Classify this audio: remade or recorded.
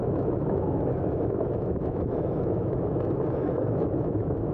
remade